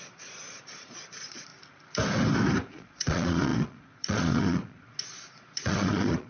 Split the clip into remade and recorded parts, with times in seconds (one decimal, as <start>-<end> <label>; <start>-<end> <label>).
0.0-1.5 remade; 1.5-2.7 recorded; 2.7-6.3 remade